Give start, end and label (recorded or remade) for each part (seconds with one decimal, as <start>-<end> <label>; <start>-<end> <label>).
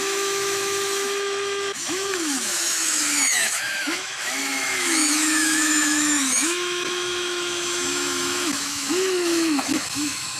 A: 0.0-10.4 remade